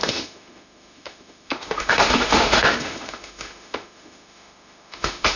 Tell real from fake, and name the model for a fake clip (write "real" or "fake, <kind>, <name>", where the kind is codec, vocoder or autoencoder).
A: fake, autoencoder, DAC-VAE